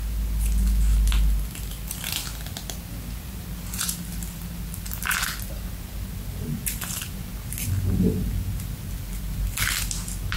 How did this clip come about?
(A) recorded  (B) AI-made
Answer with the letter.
A